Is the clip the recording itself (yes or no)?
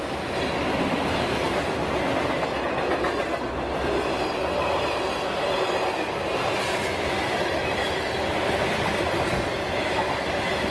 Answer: yes